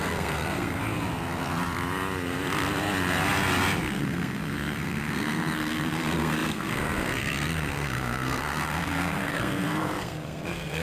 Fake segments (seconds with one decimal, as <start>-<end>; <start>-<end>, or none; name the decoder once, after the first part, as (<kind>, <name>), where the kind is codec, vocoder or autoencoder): 0.0-0.8 (codec, SNAC); 3.8-10.8